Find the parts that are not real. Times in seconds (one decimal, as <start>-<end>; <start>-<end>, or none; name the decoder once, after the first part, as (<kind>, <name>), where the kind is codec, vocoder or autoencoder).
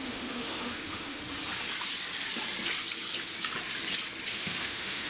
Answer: 0.0-1.2 (autoencoder, DAC-VAE); 4.3-5.1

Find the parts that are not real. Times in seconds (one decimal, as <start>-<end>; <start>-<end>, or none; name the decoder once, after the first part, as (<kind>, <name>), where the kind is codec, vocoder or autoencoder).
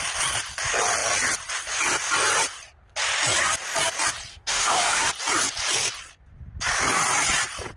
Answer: 4.3-5.1 (autoencoder, DAC-VAE)